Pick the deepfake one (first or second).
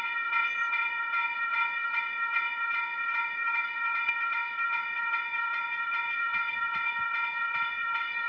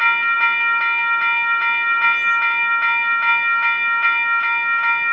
first